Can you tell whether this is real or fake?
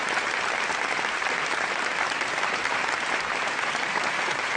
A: fake